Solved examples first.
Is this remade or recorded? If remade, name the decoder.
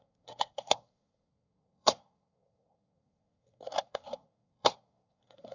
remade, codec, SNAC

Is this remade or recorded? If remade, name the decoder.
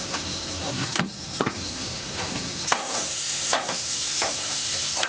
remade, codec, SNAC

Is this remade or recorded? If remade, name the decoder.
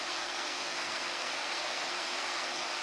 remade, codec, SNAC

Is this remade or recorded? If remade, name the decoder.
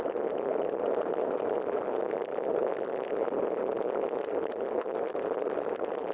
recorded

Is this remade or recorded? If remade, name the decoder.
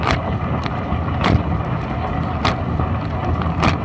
recorded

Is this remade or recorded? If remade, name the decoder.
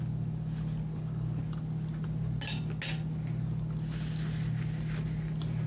recorded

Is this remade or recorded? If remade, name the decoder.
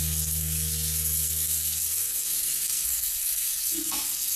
remade, codec, SNAC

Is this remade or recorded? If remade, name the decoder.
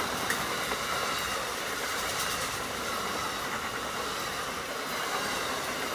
recorded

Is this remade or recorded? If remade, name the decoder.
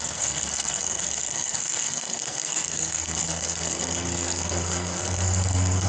remade, codec, SNAC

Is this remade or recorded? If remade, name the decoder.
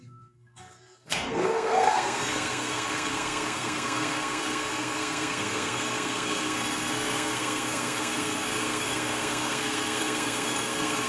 remade, codec, SNAC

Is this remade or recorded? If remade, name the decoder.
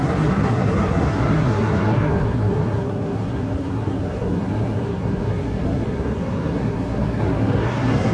remade, codec, SNAC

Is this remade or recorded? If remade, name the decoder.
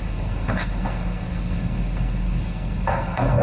remade, codec, SNAC